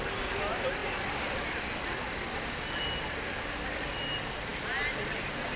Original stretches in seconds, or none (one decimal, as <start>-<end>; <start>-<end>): 0.0-5.6